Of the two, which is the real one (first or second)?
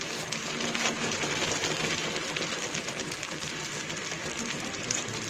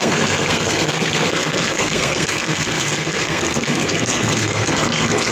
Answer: first